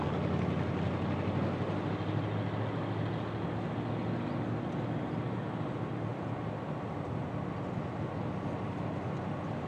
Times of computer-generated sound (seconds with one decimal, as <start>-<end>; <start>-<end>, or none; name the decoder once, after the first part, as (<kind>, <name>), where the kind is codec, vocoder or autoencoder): none